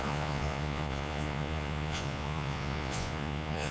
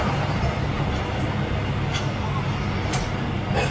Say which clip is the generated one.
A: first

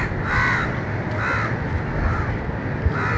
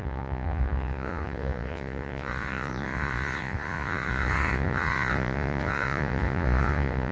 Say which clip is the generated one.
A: second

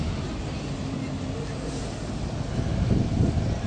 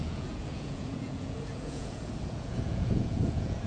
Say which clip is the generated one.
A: second